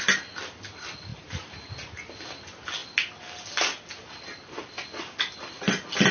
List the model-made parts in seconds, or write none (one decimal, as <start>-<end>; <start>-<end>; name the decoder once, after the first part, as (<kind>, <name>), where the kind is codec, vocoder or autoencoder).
1.1-1.7 (vocoder, BigVGAN v2)